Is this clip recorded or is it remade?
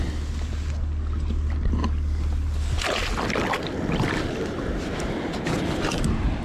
recorded